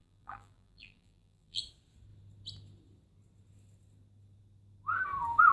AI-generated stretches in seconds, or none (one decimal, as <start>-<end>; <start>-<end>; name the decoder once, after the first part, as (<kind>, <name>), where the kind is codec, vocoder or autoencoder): 0.0-1.6 (vocoder, BigVGAN v2)

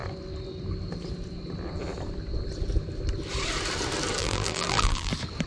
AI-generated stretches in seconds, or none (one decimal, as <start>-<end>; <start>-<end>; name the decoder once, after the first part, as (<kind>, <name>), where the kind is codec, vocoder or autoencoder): 4.2-5.1 (vocoder, BigVGAN v2)

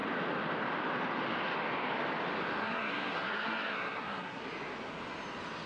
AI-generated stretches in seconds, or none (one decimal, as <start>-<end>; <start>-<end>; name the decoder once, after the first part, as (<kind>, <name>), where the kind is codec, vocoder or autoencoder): 2.6-4.4 (codec, SNAC)